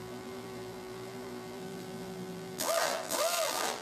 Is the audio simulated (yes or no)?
yes